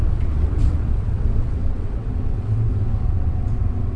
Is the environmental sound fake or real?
fake